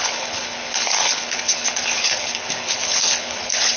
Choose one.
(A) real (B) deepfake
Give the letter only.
B